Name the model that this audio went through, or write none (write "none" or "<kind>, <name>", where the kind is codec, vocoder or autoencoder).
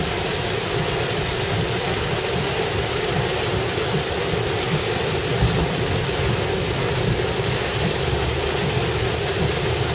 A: none